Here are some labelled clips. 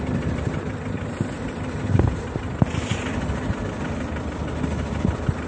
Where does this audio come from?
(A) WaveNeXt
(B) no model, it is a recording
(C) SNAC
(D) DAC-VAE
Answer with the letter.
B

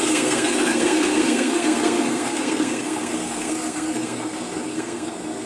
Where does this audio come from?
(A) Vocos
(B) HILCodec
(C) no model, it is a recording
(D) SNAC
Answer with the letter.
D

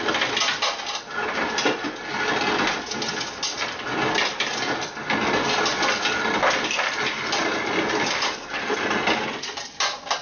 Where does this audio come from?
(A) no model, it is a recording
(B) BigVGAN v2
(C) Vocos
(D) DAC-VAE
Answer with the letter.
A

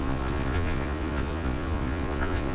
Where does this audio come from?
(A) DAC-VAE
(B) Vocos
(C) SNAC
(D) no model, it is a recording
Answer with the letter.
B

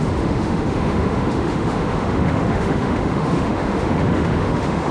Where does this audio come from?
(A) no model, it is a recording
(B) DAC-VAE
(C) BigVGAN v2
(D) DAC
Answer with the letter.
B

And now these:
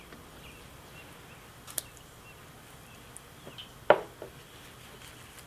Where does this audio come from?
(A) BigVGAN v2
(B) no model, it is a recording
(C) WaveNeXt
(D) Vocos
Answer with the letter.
B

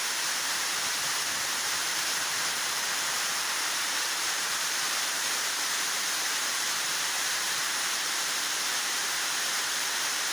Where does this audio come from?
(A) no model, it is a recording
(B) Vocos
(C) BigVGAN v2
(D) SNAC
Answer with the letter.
C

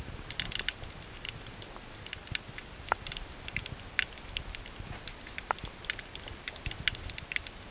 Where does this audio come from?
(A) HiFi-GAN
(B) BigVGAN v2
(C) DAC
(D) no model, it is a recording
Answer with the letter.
D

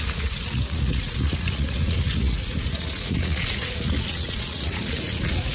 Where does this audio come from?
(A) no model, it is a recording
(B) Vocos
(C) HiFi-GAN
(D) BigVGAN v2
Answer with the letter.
B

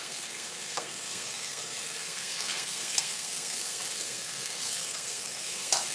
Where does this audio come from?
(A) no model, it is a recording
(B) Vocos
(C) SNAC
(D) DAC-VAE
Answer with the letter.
C